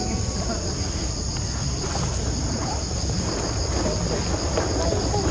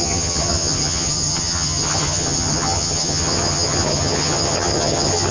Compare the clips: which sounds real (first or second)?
first